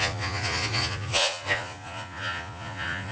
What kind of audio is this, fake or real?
fake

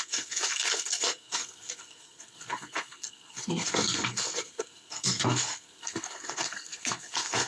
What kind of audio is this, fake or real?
fake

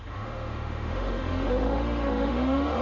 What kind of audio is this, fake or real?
fake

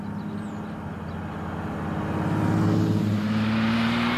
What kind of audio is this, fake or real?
real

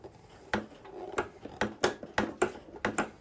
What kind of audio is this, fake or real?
real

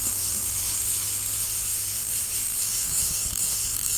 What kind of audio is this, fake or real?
fake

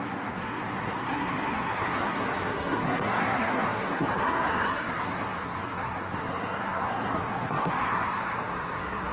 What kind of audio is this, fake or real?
fake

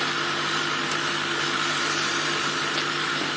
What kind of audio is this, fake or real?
real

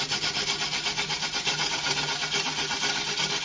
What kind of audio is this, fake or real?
real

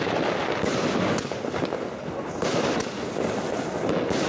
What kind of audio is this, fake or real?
real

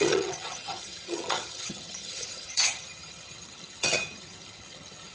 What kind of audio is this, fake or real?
fake